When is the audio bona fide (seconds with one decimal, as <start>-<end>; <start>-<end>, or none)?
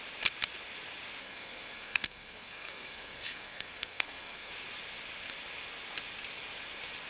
0.0-1.2; 4.5-7.1